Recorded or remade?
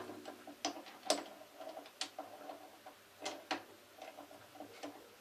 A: recorded